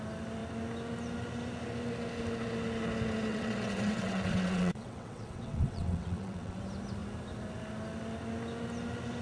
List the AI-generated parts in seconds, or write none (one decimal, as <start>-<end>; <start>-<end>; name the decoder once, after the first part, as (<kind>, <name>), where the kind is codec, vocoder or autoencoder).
3.3-6.6 (vocoder, WaveNeXt)